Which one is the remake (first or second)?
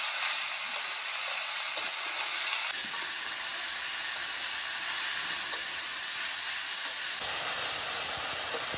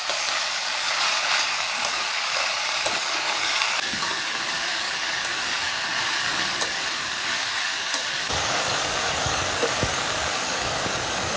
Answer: second